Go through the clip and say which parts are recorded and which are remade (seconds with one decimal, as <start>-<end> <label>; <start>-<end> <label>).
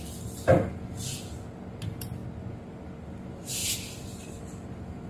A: 0.0-5.1 recorded